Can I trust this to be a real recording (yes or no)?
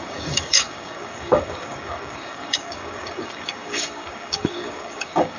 no